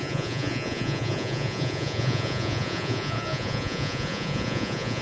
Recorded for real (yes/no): no